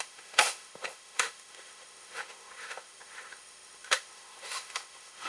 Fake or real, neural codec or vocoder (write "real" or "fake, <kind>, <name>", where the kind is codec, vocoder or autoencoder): fake, autoencoder, DAC-VAE